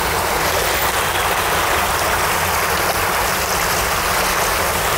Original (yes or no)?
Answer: yes